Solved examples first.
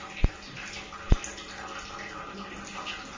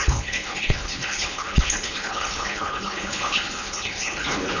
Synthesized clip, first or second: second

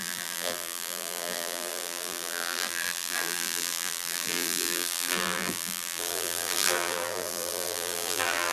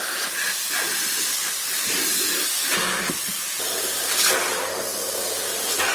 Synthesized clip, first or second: first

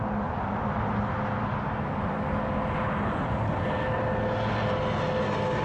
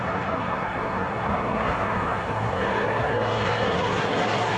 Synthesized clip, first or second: second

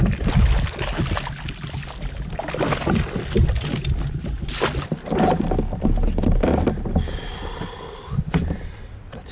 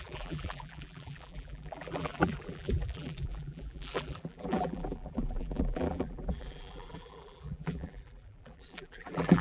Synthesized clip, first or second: second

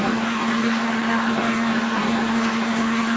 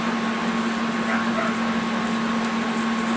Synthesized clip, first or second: first